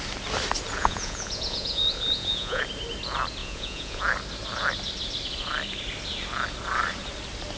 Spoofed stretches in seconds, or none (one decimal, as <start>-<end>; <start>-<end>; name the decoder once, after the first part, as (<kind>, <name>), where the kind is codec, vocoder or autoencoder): 0.8-2.6 (vocoder, Vocos); 3.4-4.0